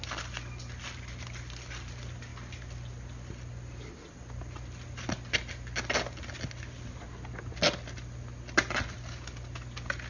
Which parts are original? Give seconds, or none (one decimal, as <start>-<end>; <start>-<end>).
0.0-10.1